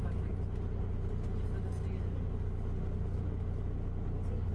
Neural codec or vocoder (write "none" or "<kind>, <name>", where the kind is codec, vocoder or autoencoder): none